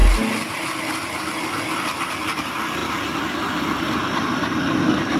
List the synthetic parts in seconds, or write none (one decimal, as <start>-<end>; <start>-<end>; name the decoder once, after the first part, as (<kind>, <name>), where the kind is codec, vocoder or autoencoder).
none